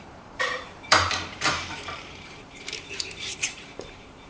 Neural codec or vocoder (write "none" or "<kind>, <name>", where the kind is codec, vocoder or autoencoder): vocoder, BigVGAN v2